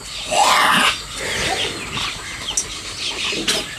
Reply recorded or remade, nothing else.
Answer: recorded